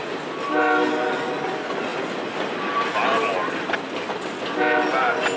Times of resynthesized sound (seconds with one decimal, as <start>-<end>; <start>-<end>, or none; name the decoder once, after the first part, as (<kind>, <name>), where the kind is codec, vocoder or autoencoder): none